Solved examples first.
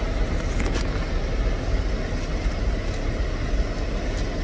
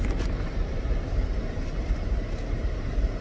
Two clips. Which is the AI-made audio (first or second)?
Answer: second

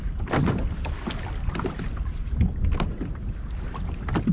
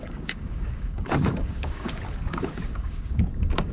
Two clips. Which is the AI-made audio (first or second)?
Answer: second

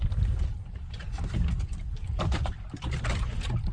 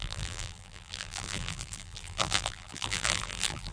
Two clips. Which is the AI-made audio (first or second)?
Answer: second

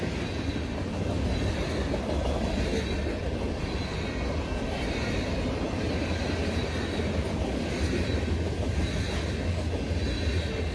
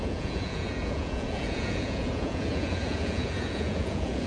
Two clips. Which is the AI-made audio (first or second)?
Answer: second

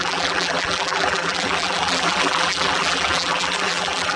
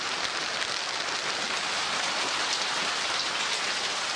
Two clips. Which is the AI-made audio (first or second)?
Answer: first